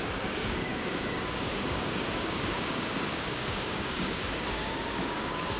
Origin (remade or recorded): remade